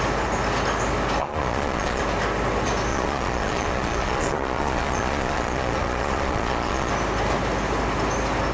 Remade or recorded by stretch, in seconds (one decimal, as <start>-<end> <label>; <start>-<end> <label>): 0.0-1.2 recorded; 1.2-2.0 remade; 2.0-2.9 recorded; 2.9-6.9 remade; 6.9-8.5 recorded